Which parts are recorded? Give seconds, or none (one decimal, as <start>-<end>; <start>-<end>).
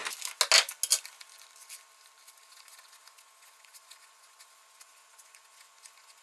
0.0-2.5